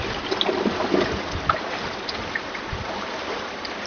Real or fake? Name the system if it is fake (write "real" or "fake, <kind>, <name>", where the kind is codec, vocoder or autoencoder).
real